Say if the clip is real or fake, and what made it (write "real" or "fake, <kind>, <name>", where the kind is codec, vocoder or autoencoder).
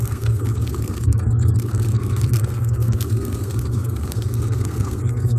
fake, codec, SNAC